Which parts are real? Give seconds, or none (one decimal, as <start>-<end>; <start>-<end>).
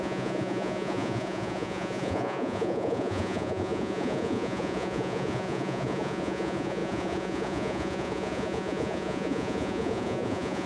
none